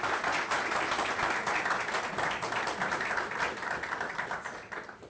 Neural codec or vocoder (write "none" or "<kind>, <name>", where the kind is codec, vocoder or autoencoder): none